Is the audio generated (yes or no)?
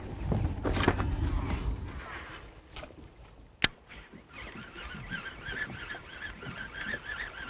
no